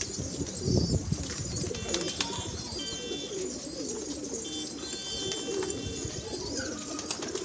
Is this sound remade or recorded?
recorded